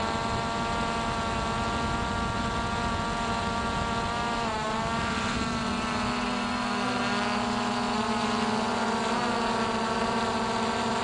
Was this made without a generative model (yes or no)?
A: yes